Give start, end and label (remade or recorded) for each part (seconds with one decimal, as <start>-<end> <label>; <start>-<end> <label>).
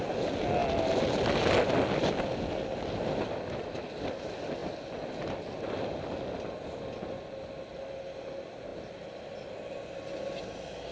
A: 0.0-10.9 recorded